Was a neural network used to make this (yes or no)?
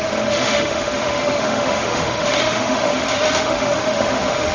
yes